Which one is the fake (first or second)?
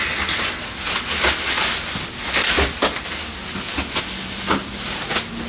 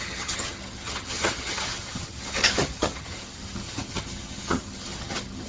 second